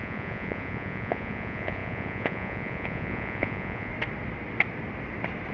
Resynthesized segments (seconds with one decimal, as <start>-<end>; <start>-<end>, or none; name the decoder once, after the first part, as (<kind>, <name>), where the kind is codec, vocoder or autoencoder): 0.0-3.9 (vocoder, Vocos)